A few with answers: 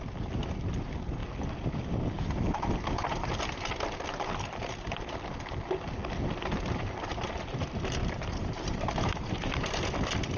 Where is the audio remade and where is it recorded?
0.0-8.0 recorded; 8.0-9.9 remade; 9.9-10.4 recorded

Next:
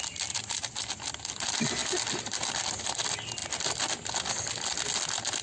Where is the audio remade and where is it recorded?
0.0-5.4 recorded

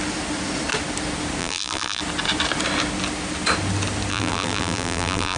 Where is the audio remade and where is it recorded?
0.0-1.4 recorded; 1.4-2.0 remade; 2.0-4.1 recorded; 4.1-5.4 remade

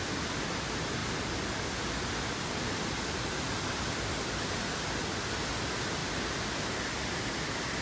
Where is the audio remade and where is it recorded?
0.0-7.8 recorded

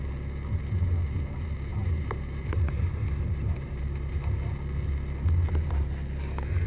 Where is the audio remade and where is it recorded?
0.0-1.7 recorded; 1.7-4.1 remade; 4.1-6.7 recorded

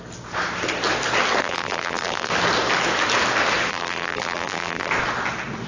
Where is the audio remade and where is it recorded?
0.0-1.4 recorded; 1.4-2.3 remade; 2.3-3.7 recorded; 3.7-4.9 remade; 4.9-5.7 recorded

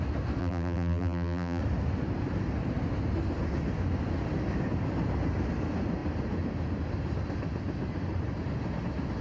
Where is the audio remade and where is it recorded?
0.0-0.4 recorded; 0.4-1.6 remade; 1.6-9.2 recorded